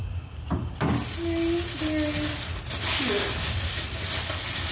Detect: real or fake real